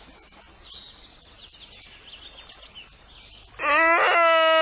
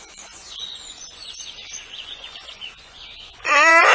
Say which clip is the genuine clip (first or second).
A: first